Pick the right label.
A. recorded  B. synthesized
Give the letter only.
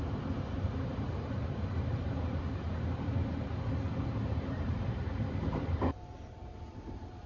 B